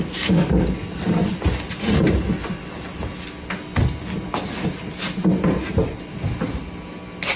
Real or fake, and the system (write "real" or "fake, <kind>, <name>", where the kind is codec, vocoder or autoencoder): real